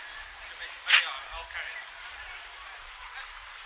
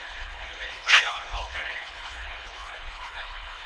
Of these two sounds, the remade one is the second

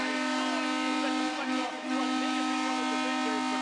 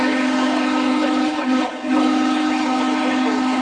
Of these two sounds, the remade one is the second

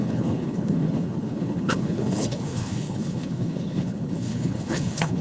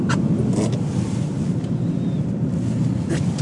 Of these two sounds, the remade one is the first